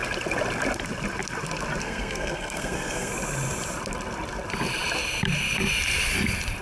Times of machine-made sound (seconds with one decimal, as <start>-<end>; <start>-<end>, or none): 1.8-3.1